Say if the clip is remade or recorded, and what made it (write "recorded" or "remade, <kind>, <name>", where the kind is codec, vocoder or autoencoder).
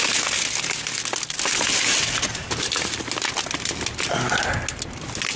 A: recorded